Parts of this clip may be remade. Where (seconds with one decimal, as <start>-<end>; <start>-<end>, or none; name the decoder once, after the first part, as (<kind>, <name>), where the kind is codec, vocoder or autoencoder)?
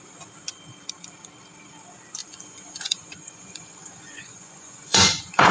2.2-5.5 (vocoder, Vocos)